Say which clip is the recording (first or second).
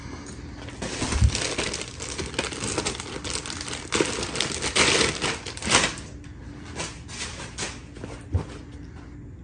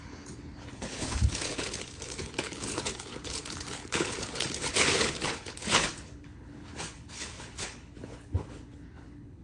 first